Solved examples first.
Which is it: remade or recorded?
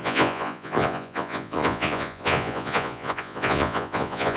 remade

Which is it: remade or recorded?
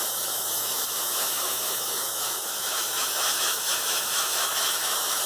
remade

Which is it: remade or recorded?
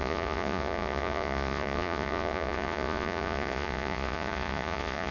remade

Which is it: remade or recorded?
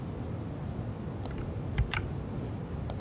recorded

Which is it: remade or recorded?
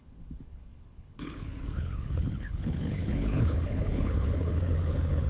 remade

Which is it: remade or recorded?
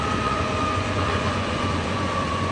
remade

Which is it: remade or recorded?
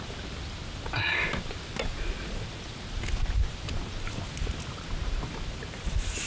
recorded